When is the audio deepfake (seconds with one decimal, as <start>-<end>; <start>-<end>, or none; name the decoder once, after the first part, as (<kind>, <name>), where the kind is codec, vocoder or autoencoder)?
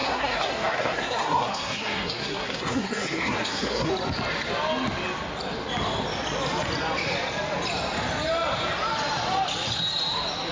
0.0-3.9 (codec, SNAC)